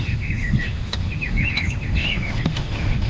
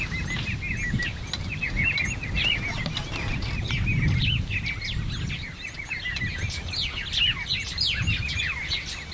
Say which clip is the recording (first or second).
second